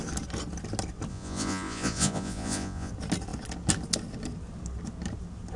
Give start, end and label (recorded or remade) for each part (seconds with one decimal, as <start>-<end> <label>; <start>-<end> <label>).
0.0-1.1 recorded; 1.1-2.9 remade; 2.9-5.6 recorded